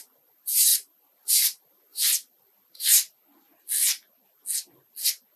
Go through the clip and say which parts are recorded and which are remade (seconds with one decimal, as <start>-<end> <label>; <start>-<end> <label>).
0.0-5.4 recorded